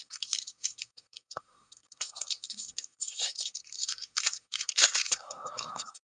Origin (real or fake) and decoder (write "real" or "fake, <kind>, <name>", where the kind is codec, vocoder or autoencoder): fake, codec, SNAC